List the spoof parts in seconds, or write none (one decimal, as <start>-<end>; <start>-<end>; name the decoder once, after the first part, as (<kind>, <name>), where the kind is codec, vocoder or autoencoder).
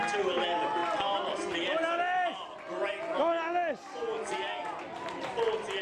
none